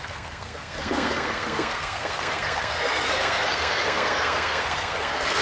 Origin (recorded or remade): remade